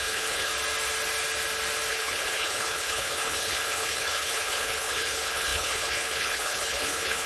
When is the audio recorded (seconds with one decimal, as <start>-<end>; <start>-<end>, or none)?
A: 0.5-1.9

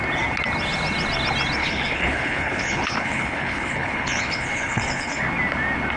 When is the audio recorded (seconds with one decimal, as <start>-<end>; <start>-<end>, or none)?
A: 0.0-1.6; 5.2-6.0

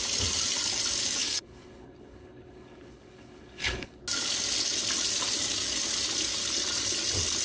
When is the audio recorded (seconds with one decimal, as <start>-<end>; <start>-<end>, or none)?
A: 0.0-1.2; 4.0-7.4